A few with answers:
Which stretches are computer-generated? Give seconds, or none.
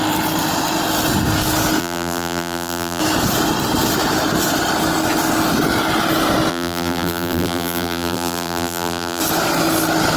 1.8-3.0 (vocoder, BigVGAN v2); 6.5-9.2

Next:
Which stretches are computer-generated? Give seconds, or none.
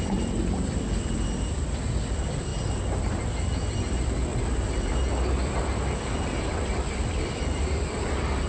0.0-2.5 (vocoder, BigVGAN v2); 3.8-4.3; 5.6-8.5